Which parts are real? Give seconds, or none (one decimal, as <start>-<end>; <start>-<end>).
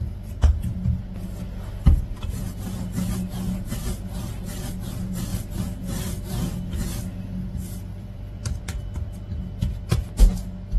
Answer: 0.0-7.9; 8.6-10.8